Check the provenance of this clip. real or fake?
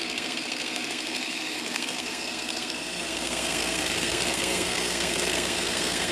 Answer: fake